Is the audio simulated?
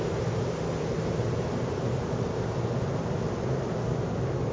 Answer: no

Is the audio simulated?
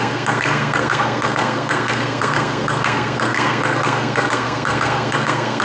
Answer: yes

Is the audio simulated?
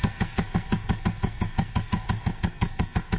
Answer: yes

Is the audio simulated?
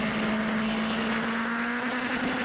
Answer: no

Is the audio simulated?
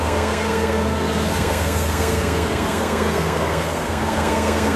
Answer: yes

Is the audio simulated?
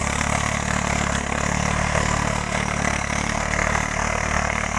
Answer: yes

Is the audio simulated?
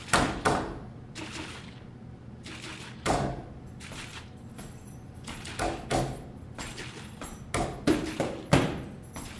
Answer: no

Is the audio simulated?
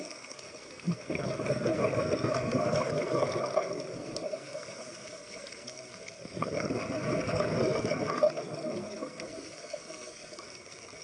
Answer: yes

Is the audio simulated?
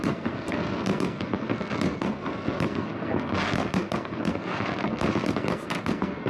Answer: yes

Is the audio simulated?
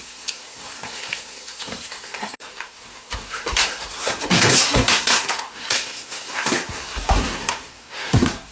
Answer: yes